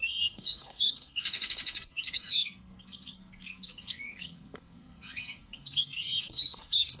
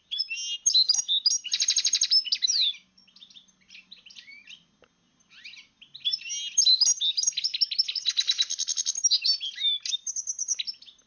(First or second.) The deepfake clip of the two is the first